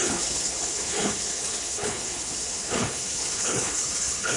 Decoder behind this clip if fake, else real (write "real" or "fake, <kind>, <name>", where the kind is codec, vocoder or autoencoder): fake, codec, HILCodec